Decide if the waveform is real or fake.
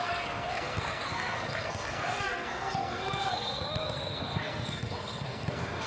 fake